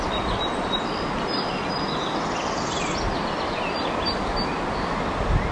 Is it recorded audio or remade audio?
recorded